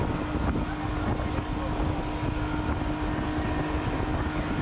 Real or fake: real